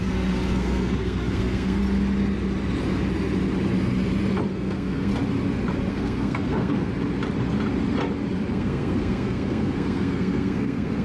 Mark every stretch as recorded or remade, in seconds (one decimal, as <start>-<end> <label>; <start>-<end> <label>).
0.0-1.8 remade; 1.8-4.5 recorded; 4.5-5.1 remade; 5.1-5.9 recorded; 5.9-6.9 remade; 6.9-8.5 recorded; 8.5-11.0 remade